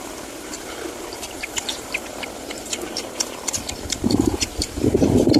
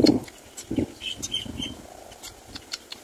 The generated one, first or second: first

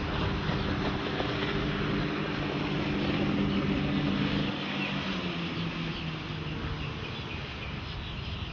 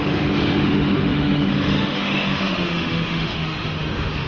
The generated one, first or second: second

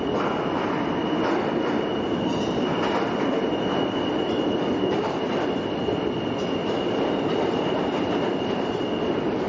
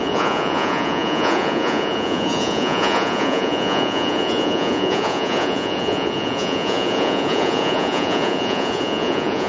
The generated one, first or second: second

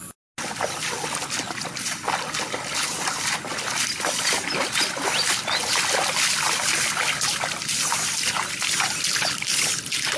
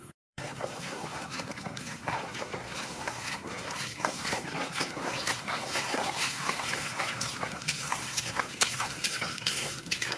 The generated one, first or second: second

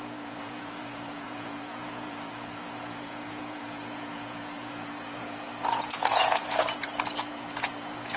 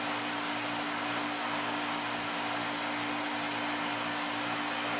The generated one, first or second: first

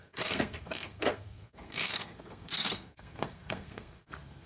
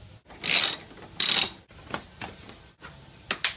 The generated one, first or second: first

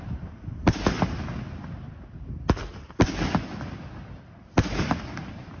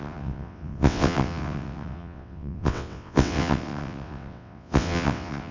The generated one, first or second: second